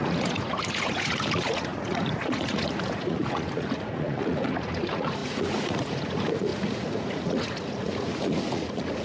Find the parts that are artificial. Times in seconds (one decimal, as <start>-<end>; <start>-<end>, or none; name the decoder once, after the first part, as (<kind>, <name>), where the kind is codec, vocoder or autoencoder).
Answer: 0.0-9.0 (vocoder, Vocos)